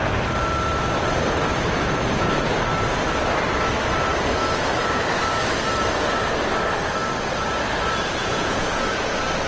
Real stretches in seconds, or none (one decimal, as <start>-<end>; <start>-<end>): 0.0-8.2; 8.9-9.5